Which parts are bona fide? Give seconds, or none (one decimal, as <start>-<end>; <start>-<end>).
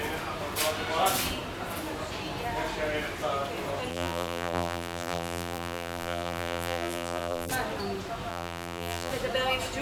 0.0-3.9; 7.5-8.3; 9.1-9.8